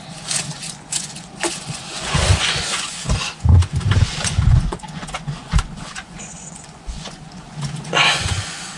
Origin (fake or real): fake